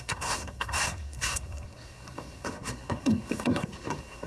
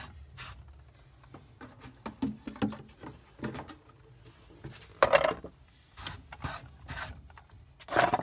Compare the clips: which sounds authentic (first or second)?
second